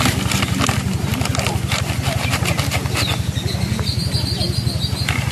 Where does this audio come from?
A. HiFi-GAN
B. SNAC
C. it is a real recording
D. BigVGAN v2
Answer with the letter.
C